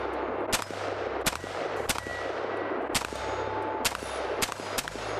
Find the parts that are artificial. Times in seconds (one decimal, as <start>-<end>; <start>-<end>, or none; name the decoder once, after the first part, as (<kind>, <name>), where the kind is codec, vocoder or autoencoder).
none